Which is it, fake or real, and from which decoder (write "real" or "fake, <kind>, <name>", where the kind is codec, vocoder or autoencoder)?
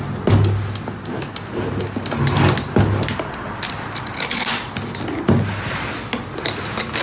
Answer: real